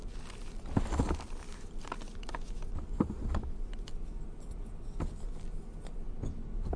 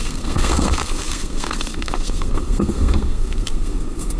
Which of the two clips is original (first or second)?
first